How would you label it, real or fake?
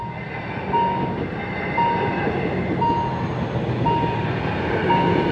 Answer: real